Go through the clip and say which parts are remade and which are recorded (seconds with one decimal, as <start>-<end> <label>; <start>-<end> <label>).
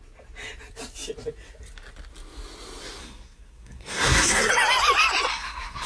0.0-3.0 recorded; 3.0-4.5 remade; 4.5-5.3 recorded; 5.3-5.9 remade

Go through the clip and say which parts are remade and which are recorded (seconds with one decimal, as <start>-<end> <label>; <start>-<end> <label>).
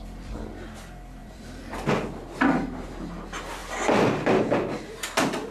0.0-1.2 recorded; 1.2-1.9 remade; 1.9-3.6 recorded; 3.6-4.8 remade; 4.8-5.5 recorded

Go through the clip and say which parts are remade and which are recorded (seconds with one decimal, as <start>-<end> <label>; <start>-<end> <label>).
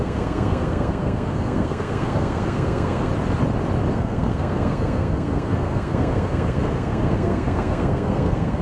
0.0-3.1 remade; 3.1-3.9 recorded; 3.9-8.6 remade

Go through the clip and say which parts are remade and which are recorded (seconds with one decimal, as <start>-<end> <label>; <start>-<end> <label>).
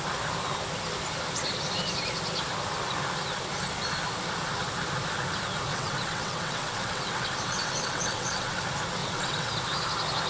0.0-5.7 recorded; 5.7-8.6 remade; 8.6-9.0 recorded; 9.0-9.5 remade; 9.5-10.3 recorded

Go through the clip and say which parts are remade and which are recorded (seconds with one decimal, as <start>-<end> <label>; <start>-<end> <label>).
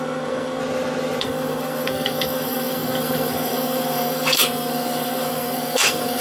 0.0-0.6 remade; 0.6-1.2 recorded; 1.2-6.2 remade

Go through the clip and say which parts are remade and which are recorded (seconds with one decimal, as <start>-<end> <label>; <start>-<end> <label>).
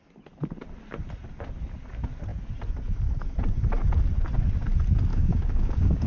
0.0-5.1 recorded; 5.1-6.1 remade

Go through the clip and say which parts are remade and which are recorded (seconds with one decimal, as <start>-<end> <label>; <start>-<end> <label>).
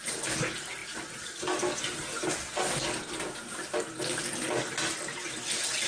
0.0-5.9 recorded